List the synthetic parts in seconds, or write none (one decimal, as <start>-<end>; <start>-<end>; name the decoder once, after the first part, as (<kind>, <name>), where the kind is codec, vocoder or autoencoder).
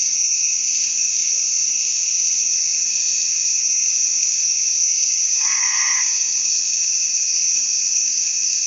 0.0-8.7 (codec, SNAC)